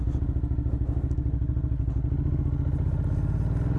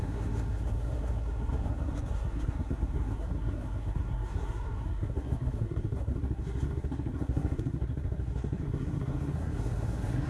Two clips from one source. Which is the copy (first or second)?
second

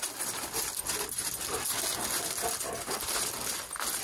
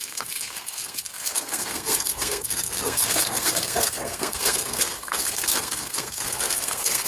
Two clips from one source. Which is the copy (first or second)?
second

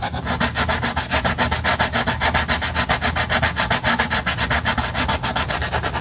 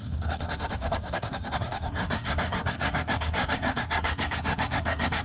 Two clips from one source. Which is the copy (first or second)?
second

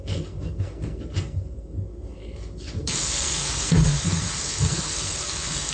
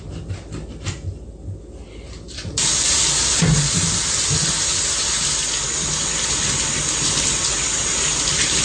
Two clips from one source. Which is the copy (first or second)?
first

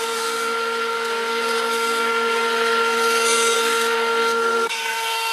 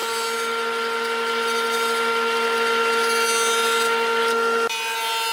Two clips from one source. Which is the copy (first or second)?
first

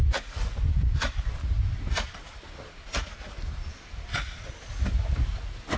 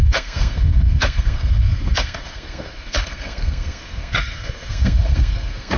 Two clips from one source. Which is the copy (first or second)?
second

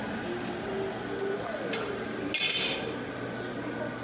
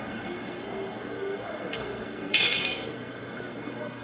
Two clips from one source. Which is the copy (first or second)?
second